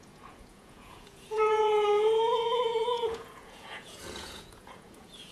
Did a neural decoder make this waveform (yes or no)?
yes